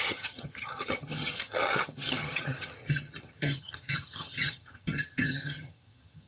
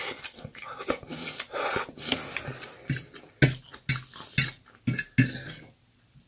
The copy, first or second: first